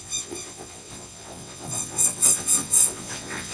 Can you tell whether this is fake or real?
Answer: fake